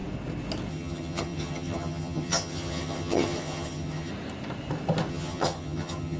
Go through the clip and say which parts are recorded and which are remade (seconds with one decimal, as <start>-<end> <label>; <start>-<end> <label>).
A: 0.0-0.7 recorded; 0.7-4.1 remade; 4.1-5.1 recorded; 5.1-6.2 remade